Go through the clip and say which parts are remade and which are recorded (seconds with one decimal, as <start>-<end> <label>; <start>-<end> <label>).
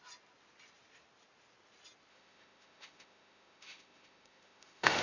0.0-2.1 recorded; 2.1-5.0 remade